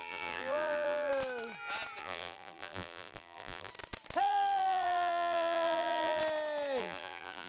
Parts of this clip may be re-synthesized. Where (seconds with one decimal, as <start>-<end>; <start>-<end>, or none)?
0.0-1.1; 2.0-3.7; 4.2-6.2; 6.8-7.5